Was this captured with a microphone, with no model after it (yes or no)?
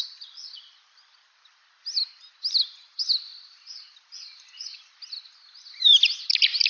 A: yes